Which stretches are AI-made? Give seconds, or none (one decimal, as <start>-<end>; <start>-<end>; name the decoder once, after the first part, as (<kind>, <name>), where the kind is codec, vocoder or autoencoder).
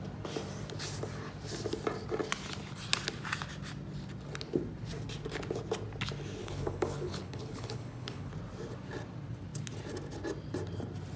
6.4-8.3 (codec, HILCodec)